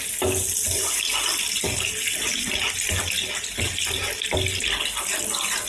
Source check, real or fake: real